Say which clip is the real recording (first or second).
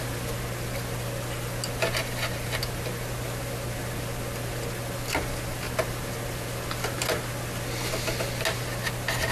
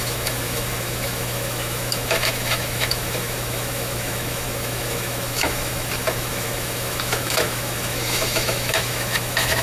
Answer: first